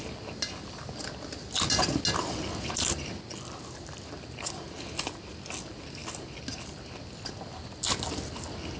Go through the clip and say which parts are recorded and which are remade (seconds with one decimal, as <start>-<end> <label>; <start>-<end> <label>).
0.0-8.8 recorded